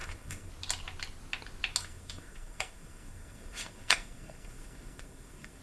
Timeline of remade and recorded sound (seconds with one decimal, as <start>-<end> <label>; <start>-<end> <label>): 0.0-0.5 remade; 0.5-1.8 recorded; 1.8-5.6 remade